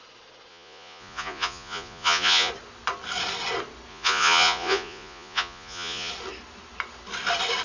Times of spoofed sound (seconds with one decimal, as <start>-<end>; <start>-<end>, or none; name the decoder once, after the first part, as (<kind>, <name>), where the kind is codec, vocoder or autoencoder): 0.5-2.5 (vocoder, Vocos); 3.9-6.1